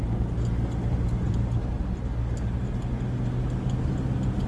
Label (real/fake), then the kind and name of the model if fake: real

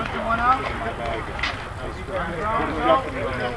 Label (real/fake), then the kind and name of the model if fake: real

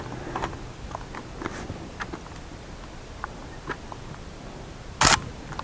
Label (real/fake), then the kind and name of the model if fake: real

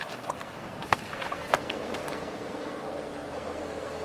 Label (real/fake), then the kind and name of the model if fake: fake, codec, SNAC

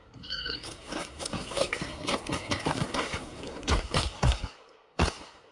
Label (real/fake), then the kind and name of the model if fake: fake, codec, SNAC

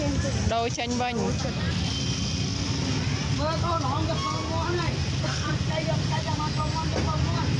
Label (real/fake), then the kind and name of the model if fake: real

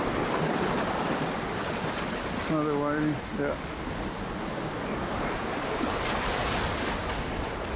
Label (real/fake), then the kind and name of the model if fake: real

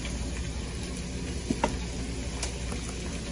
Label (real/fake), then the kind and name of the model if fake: real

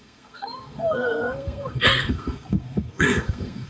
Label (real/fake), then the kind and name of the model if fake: fake, codec, SNAC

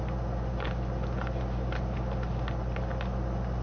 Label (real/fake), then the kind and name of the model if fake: real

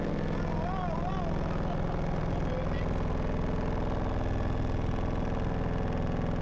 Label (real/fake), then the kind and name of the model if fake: real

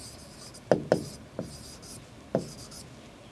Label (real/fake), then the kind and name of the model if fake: real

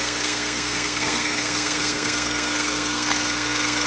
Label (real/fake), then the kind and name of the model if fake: fake, codec, SNAC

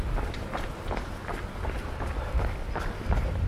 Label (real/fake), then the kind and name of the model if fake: real